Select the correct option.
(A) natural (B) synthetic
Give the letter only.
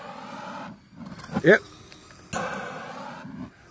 A